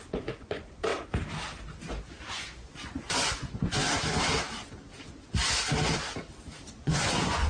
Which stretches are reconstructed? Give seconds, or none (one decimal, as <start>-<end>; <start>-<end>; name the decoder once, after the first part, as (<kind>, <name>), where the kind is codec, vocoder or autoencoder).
0.0-0.9 (vocoder, Vocos); 2.2-3.8; 6.7-7.5